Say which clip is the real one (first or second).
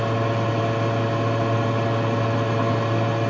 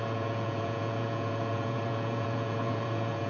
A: first